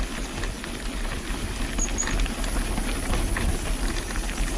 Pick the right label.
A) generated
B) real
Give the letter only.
B